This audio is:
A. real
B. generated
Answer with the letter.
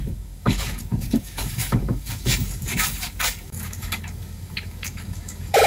B